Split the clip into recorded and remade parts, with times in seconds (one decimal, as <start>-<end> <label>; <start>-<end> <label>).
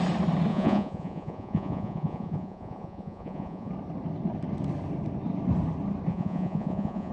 0.0-0.5 recorded; 0.5-3.7 remade; 3.7-6.1 recorded; 6.1-7.1 remade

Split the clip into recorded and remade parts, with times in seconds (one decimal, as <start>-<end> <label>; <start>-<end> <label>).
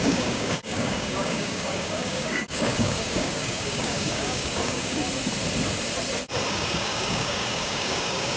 0.0-5.0 remade; 5.0-6.5 recorded; 6.5-8.4 remade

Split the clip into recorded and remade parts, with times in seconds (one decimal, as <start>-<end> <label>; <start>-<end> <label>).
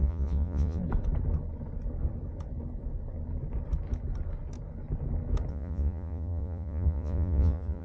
0.0-0.8 remade; 0.8-5.5 recorded; 5.5-7.8 remade